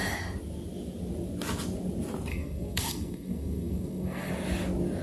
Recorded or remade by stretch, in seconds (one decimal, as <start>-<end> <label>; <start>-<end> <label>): 0.0-2.3 recorded; 2.3-4.3 remade; 4.3-5.0 recorded